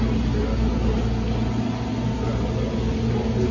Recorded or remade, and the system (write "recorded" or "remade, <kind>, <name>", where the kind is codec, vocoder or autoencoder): recorded